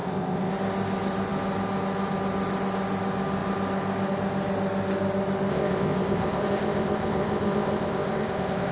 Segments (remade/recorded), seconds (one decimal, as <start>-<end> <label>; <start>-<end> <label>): 0.0-0.5 remade; 0.5-5.5 recorded; 5.5-8.7 remade